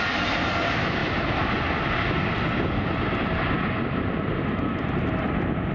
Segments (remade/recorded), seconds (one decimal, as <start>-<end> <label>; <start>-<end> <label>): 0.0-5.7 recorded